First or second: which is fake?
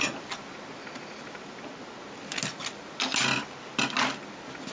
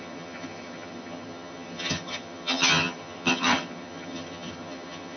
second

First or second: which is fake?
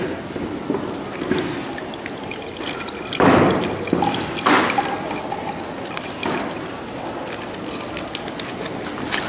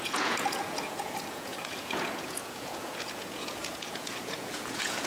second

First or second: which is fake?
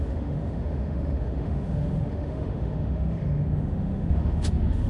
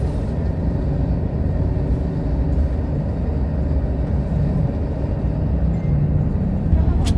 first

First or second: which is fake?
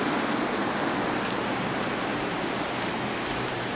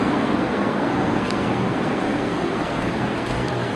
second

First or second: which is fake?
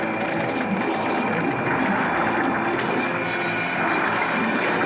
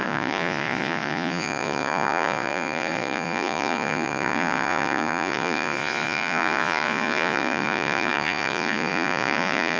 second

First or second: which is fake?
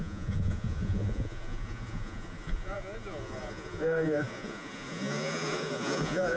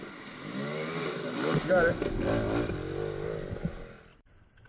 first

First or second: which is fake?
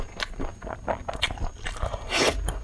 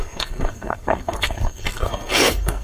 second